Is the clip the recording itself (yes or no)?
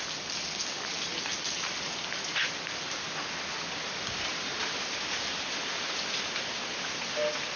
yes